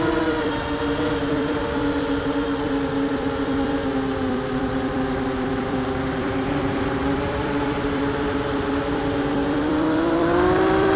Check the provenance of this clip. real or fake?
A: fake